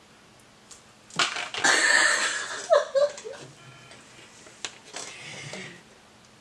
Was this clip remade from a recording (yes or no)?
no